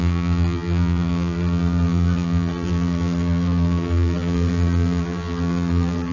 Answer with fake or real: fake